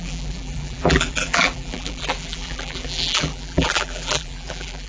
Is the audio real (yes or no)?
no